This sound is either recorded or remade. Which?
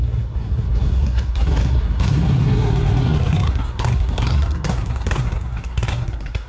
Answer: remade